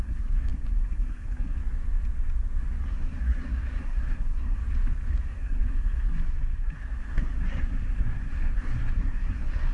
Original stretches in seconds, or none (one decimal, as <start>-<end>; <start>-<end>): 1.6-2.8; 4.6-5.1